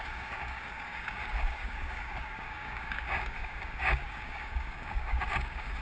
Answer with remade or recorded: remade